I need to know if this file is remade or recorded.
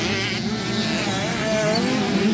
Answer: recorded